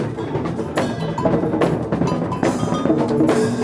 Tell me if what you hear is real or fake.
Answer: real